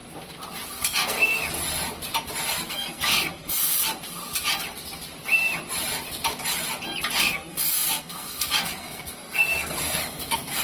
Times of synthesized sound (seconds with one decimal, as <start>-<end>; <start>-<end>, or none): 0.7-1.4; 2.7-3.7; 7.2-10.6